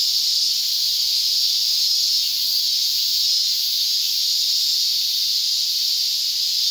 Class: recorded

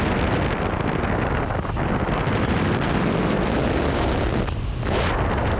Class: recorded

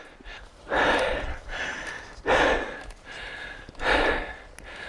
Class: recorded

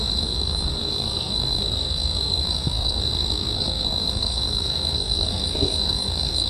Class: remade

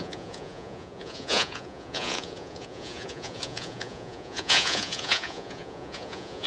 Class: remade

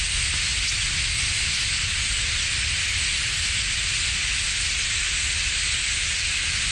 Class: recorded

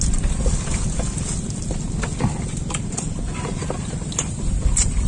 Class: recorded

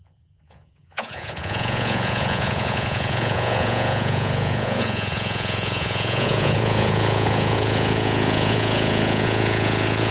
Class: remade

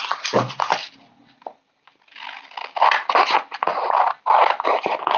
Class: recorded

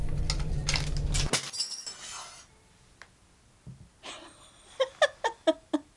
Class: recorded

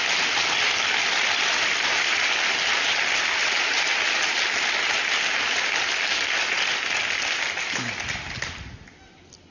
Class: recorded